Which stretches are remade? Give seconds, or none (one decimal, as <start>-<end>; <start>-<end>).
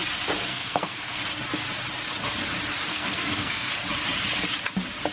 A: 0.5-1.2; 2.9-3.7